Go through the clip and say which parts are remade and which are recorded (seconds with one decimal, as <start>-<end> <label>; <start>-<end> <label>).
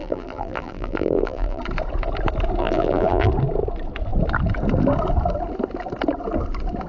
0.0-1.6 remade; 1.6-2.6 recorded; 2.6-3.3 remade; 3.3-6.9 recorded